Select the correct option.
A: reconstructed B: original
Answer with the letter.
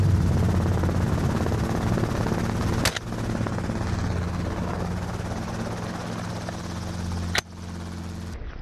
B